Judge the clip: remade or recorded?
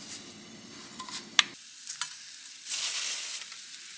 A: recorded